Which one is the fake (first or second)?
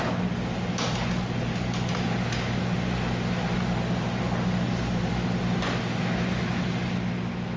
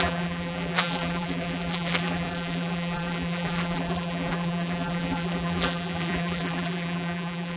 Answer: second